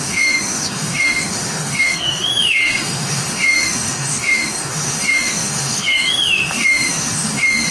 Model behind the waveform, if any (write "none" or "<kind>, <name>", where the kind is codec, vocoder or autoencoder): autoencoder, DAC-VAE